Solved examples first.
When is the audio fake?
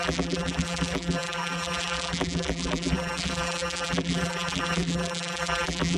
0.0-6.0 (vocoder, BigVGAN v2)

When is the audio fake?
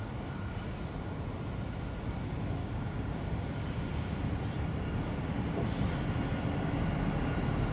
2.6-3.2 (codec, DAC)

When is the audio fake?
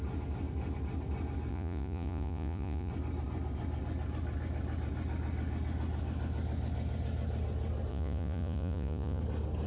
1.5-2.9 (vocoder, Vocos); 7.9-9.2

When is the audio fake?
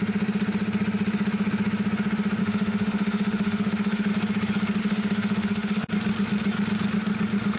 2.4-4.1 (autoencoder, DAC-VAE); 4.8-5.9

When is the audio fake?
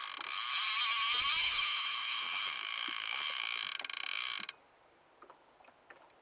1.4-3.4 (autoencoder, DAC-VAE)